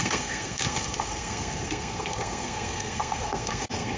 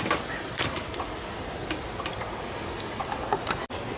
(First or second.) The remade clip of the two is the first